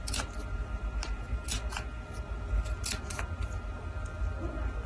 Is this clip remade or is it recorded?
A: recorded